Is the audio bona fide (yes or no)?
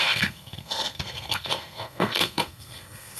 no